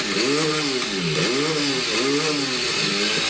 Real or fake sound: real